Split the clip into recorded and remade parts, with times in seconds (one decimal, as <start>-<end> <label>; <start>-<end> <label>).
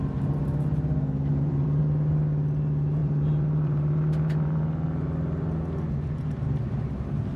0.0-1.3 recorded; 1.3-1.8 remade; 1.8-3.0 recorded; 3.0-4.6 remade; 4.6-7.4 recorded